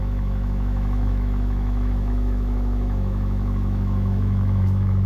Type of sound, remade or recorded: remade